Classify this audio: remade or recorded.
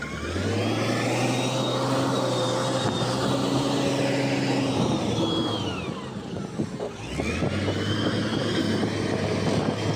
recorded